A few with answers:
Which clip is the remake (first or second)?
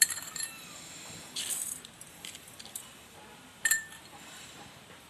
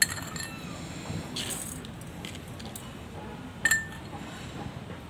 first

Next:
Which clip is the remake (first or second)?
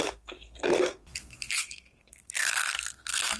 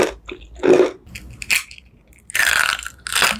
first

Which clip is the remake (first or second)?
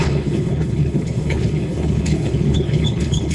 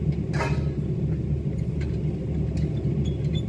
first